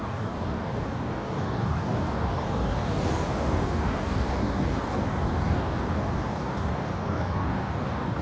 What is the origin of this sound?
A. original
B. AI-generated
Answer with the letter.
B